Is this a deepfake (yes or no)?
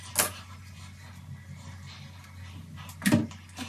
no